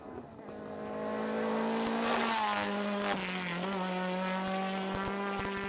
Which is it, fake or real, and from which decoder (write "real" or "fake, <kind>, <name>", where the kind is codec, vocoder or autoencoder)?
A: real